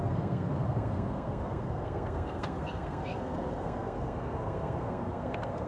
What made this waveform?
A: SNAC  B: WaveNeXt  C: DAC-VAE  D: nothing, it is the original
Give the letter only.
A